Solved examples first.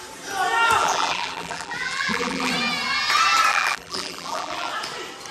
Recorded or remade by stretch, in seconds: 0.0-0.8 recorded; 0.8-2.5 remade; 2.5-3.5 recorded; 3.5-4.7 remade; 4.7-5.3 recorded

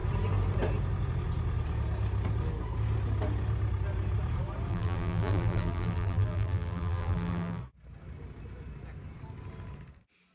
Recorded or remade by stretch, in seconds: 0.0-4.7 recorded; 4.7-7.6 remade; 7.6-10.3 recorded